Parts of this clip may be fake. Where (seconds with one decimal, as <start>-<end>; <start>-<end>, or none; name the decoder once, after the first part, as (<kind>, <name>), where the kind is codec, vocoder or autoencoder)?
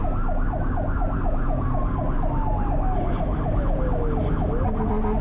3.3-3.8 (vocoder, BigVGAN v2)